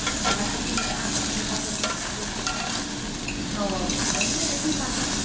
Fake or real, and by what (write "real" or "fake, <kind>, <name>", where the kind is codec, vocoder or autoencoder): real